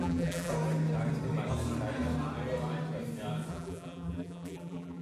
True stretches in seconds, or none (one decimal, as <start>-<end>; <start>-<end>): 0.5-3.5